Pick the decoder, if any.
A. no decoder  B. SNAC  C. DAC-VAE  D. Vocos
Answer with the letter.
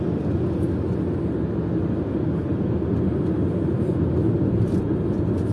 A